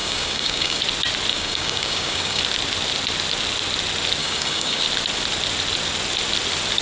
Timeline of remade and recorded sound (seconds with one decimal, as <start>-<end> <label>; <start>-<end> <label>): 0.0-0.8 remade; 0.8-1.3 recorded; 1.3-2.4 remade; 2.4-4.2 recorded; 4.2-4.8 remade; 4.8-6.8 recorded